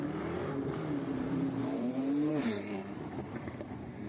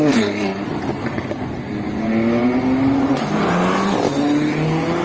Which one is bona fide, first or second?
second